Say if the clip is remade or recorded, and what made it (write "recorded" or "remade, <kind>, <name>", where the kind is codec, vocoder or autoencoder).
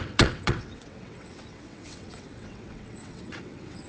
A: remade, vocoder, WaveNeXt